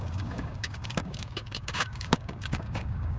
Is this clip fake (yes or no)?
yes